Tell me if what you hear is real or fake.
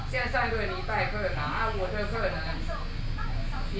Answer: real